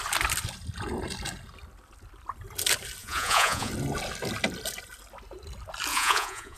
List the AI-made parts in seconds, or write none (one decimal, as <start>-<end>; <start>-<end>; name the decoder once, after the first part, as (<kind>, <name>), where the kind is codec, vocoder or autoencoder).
3.0-3.7 (vocoder, Vocos); 5.9-6.6